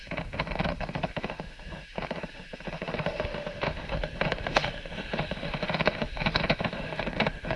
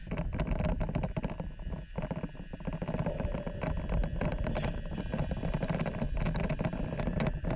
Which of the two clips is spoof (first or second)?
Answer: first